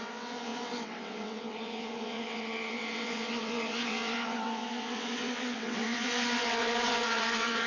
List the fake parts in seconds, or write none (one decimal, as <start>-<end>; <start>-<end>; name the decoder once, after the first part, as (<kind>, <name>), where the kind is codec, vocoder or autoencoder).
0.0-7.7 (vocoder, WaveNeXt)